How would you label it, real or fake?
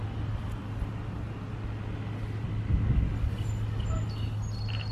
real